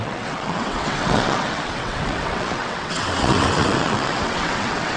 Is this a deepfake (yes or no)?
yes